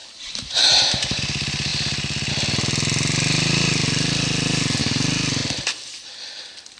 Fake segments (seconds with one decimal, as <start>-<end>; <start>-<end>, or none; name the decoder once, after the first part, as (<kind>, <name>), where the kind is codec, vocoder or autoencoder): 0.0-1.2 (vocoder, BigVGAN v2)